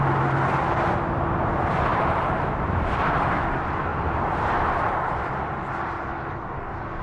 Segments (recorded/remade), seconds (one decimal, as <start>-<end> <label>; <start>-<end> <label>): 0.0-1.9 recorded; 1.9-2.9 remade; 2.9-3.9 recorded; 3.9-5.3 remade; 5.3-7.0 recorded